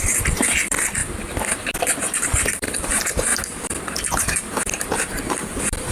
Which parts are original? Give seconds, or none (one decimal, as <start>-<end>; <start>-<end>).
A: 1.0-2.0; 3.3-5.4